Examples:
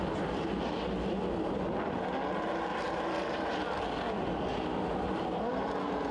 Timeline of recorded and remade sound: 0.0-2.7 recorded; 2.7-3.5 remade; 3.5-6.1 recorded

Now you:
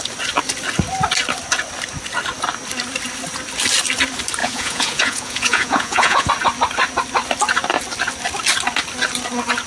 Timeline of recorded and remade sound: 0.0-4.4 recorded; 4.4-6.3 remade; 6.3-9.7 recorded

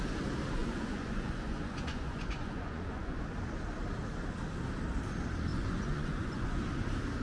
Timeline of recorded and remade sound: 0.0-0.6 recorded; 0.6-3.2 remade; 3.2-5.5 recorded; 5.5-6.6 remade; 6.6-7.2 recorded

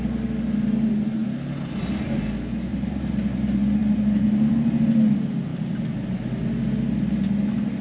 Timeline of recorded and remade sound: 0.0-2.7 recorded; 2.7-3.2 remade; 3.2-3.8 recorded; 3.8-4.5 remade; 4.5-7.8 recorded

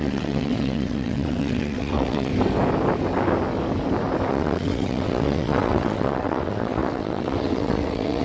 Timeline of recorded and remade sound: 0.0-2.3 remade; 2.3-4.3 recorded; 4.3-8.2 remade

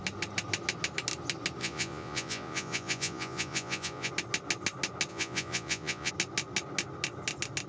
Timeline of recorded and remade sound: 0.0-1.6 recorded; 1.6-4.1 remade; 4.1-5.1 recorded; 5.1-6.1 remade; 6.1-7.7 recorded

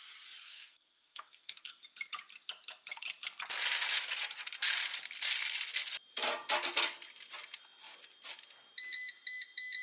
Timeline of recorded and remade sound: 0.0-0.4 recorded; 0.4-1.7 remade; 1.7-9.8 recorded

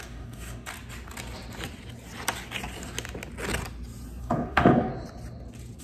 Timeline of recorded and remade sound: 0.0-0.7 remade; 0.7-4.2 recorded; 4.2-4.9 remade; 4.9-5.8 recorded